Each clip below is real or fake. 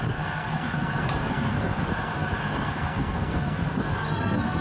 fake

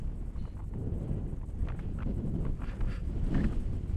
real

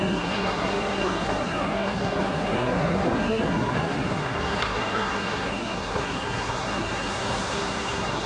fake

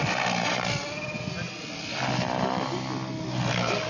real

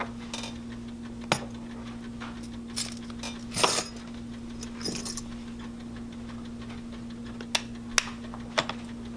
real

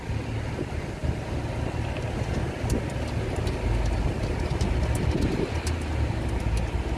real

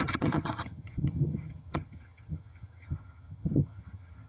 fake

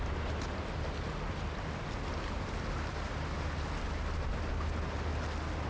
real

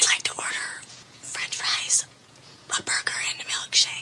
fake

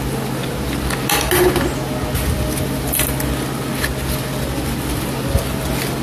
real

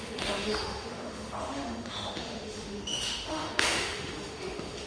fake